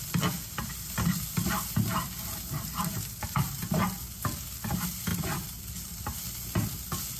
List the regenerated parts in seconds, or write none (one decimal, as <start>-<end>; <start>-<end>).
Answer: 5.1-5.6